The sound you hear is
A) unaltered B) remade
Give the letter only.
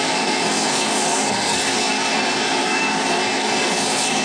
B